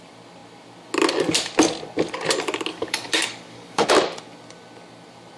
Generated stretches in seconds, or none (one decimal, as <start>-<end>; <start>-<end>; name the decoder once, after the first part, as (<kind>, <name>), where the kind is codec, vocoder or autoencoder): 2.7-3.9 (codec, DAC)